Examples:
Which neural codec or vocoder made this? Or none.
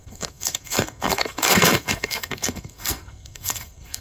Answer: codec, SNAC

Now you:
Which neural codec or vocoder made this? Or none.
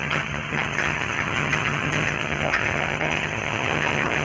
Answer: vocoder, HiFi-GAN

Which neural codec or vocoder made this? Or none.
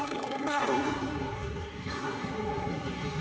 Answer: codec, SNAC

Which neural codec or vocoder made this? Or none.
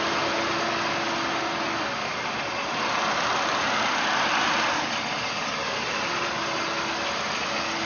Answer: none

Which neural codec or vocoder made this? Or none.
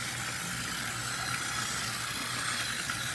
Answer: none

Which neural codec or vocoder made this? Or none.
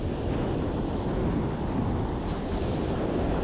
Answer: none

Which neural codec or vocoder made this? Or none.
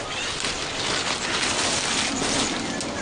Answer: none